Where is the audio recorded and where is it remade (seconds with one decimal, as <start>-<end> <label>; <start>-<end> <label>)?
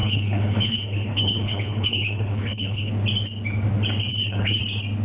0.0-2.9 remade; 2.9-4.1 recorded; 4.1-4.6 remade; 4.6-5.0 recorded